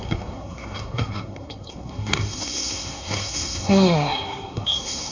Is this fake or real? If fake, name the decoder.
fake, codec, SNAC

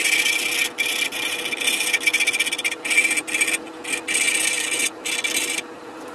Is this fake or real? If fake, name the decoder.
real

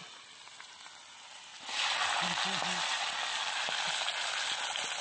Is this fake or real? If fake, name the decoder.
real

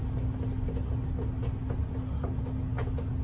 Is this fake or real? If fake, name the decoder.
real